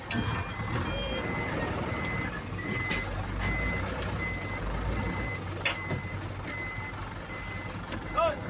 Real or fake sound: real